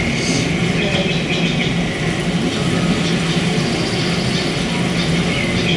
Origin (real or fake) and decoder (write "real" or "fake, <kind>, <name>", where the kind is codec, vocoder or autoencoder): real